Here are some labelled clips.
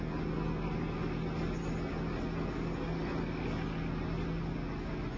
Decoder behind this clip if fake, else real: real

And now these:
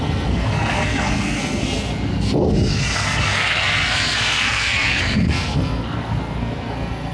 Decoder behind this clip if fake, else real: fake, codec, SNAC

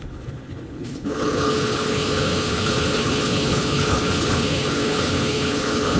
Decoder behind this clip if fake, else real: fake, codec, HILCodec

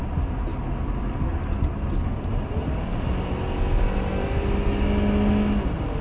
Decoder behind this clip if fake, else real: real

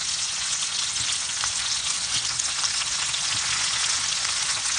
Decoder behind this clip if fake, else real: fake, vocoder, Vocos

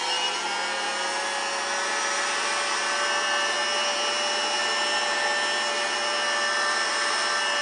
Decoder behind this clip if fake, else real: real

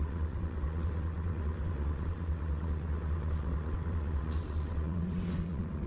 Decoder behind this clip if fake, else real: fake, vocoder, WaveNeXt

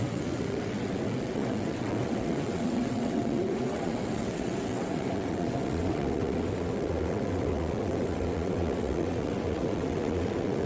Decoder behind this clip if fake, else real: fake, vocoder, WaveNeXt